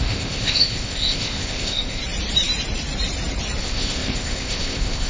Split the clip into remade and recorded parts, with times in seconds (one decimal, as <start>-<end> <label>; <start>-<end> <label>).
0.0-2.0 remade; 2.0-3.6 recorded; 3.6-5.1 remade